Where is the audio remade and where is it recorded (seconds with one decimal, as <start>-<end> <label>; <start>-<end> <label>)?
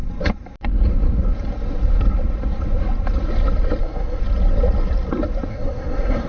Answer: 0.0-3.8 recorded; 3.8-4.2 remade; 4.2-5.5 recorded; 5.5-6.3 remade